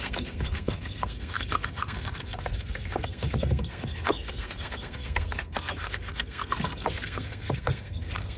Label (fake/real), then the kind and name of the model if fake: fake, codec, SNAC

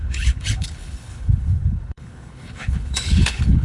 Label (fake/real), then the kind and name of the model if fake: fake, codec, HILCodec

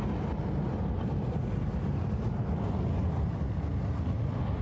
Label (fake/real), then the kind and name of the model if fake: real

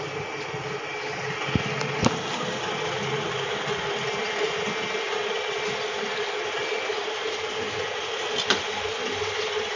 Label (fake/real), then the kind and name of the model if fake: real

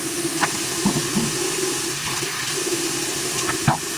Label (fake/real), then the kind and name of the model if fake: real